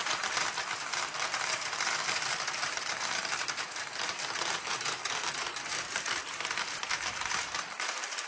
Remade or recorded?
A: remade